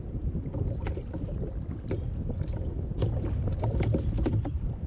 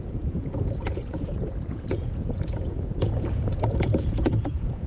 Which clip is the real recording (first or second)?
first